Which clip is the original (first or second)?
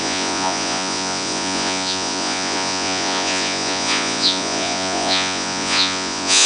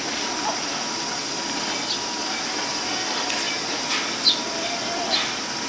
second